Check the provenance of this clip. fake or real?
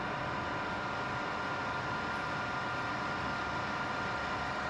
real